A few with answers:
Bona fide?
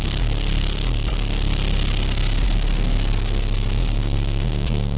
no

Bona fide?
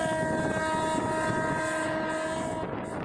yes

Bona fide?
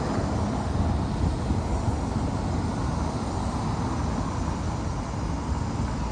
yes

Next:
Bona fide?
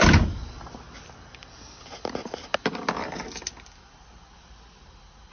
yes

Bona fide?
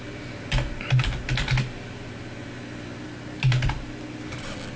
yes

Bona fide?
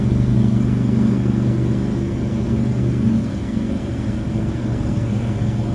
no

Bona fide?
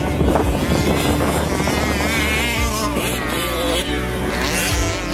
yes